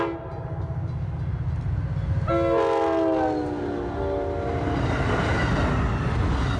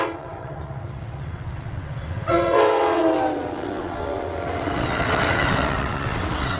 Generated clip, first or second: second